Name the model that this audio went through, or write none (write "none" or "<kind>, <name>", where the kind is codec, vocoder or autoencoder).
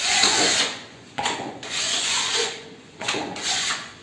vocoder, Vocos